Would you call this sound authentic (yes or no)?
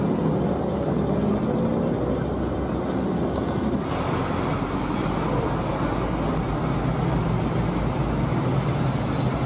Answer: yes